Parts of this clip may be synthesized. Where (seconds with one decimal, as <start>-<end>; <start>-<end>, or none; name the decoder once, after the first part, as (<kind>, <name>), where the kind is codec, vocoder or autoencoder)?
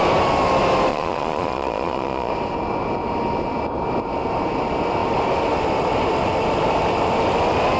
0.9-2.3 (vocoder, Vocos)